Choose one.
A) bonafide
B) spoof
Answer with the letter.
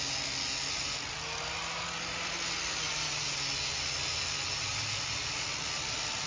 A